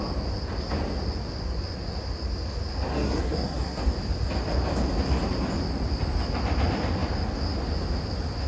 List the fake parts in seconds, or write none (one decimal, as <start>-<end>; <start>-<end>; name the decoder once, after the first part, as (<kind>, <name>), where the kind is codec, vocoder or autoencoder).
2.9-3.8 (codec, SNAC)